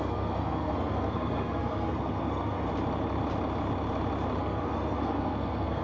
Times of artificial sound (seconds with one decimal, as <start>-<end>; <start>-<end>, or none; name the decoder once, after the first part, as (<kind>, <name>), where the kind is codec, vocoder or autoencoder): 0.0-2.7 (codec, SNAC); 4.4-5.8